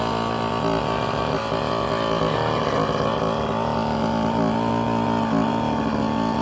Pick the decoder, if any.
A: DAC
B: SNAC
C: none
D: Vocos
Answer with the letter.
C